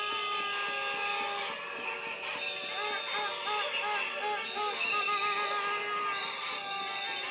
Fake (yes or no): no